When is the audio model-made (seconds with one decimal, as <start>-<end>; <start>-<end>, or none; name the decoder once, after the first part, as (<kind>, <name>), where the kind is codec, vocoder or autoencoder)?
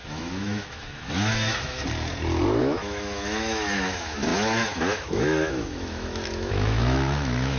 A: 0.0-1.8 (autoencoder, DAC-VAE); 2.6-7.6